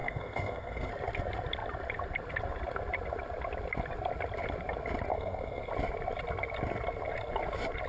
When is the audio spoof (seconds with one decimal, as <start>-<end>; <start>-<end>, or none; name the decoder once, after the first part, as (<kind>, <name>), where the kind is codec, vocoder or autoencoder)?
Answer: 0.0-0.9 (codec, SNAC); 5.1-5.7